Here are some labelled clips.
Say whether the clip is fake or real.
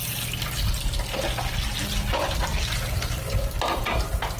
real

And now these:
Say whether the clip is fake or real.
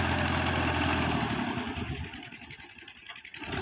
real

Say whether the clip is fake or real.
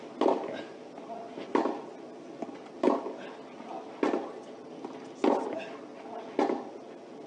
real